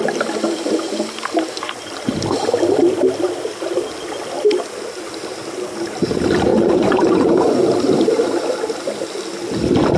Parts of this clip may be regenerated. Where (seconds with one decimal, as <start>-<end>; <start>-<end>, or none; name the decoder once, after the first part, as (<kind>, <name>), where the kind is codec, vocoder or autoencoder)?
6.5-7.6 (vocoder, Vocos)